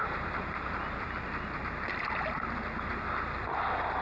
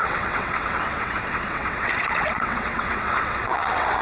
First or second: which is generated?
second